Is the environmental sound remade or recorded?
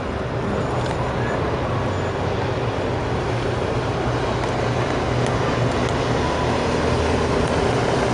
recorded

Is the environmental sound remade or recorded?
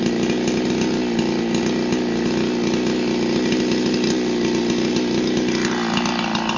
recorded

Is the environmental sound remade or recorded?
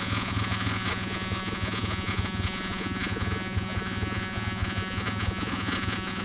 remade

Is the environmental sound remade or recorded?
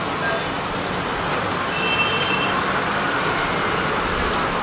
recorded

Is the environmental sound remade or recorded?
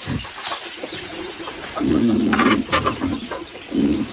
remade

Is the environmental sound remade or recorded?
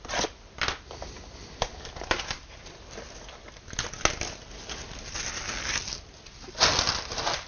recorded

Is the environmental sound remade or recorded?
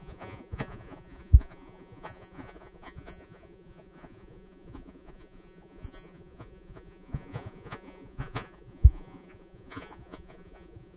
remade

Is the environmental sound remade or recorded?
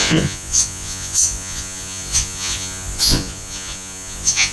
remade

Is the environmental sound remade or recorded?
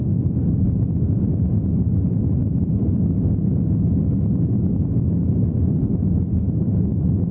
recorded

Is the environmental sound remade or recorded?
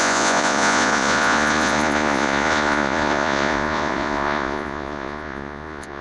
remade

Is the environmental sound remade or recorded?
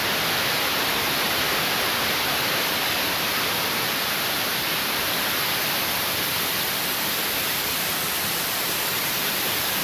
recorded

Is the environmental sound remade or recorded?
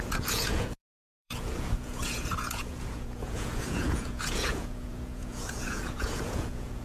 remade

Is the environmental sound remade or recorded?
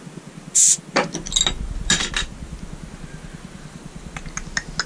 recorded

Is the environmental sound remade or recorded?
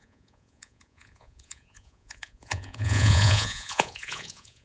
remade